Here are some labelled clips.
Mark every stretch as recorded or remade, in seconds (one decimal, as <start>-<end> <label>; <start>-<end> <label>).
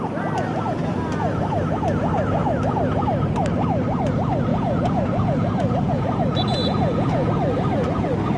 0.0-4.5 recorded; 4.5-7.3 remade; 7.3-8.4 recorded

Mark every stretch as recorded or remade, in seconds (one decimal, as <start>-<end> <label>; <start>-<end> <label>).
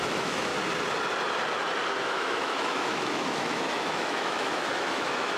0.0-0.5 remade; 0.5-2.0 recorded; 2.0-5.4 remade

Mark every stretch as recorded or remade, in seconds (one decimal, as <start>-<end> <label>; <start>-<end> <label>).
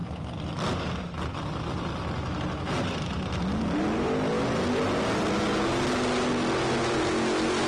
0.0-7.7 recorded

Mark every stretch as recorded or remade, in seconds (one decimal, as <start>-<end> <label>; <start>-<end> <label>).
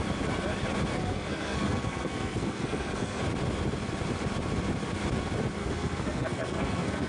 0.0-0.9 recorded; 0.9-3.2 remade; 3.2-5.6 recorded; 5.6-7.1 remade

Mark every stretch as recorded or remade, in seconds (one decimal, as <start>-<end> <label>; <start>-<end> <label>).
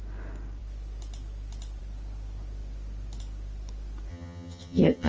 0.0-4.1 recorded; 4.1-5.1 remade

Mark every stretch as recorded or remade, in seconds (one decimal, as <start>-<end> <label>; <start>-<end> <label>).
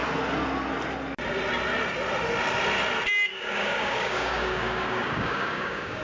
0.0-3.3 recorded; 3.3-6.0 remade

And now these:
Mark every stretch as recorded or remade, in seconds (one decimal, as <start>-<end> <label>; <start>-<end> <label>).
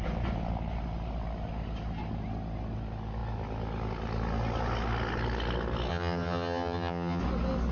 0.0-5.9 recorded; 5.9-7.2 remade; 7.2-7.7 recorded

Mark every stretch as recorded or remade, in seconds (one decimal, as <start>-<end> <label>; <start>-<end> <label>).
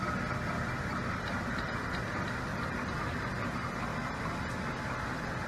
0.0-0.9 recorded; 0.9-2.1 remade; 2.1-2.5 recorded; 2.5-3.5 remade; 3.5-3.9 recorded; 3.9-5.5 remade